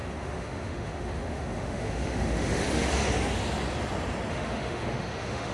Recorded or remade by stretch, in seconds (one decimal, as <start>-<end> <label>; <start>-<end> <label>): 0.0-3.0 remade; 3.0-4.3 recorded; 4.3-5.5 remade